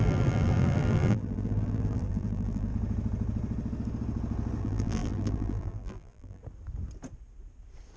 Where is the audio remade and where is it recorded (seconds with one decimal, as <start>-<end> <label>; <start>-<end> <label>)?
0.0-2.7 remade; 2.7-4.6 recorded; 4.6-6.4 remade; 6.4-8.0 recorded